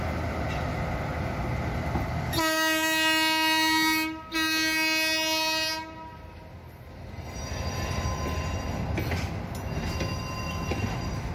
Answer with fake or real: real